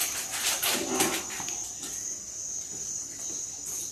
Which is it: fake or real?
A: real